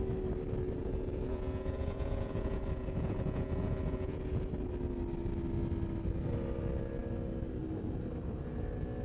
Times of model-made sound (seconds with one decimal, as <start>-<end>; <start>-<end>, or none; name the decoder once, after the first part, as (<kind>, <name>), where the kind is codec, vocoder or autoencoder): 0.8-4.5 (vocoder, Vocos)

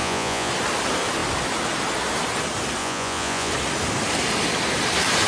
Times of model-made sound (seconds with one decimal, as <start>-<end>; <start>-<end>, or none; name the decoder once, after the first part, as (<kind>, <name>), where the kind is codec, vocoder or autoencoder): 0.0-0.5 (vocoder, Vocos); 2.8-3.5

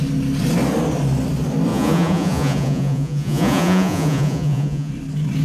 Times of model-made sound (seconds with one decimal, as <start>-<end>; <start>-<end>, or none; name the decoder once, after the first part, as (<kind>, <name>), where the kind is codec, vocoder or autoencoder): 1.7-4.9 (vocoder, Vocos)

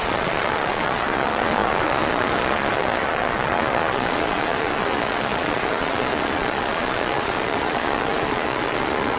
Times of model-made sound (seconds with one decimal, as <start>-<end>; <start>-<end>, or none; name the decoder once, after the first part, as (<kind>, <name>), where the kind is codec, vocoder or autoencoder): 0.0-9.2 (vocoder, Vocos)

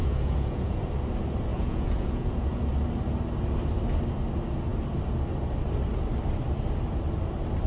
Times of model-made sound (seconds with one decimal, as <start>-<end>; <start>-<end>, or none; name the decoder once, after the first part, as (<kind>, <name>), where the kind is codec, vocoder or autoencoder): 0.0-0.9 (vocoder, Vocos); 1.5-2.6

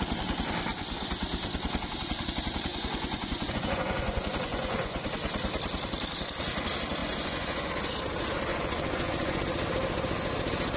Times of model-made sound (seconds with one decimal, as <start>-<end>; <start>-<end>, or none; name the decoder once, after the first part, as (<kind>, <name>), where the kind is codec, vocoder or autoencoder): 2.7-5.1 (vocoder, Vocos); 7.0-7.7; 8.5-9.4

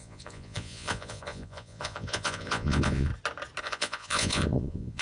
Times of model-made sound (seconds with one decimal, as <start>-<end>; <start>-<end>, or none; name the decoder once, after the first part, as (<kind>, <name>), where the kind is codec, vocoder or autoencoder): 0.0-3.1 (vocoder, Vocos); 3.6-5.0